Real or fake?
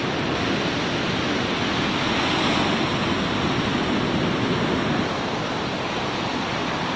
real